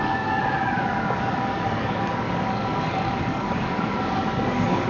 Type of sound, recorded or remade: remade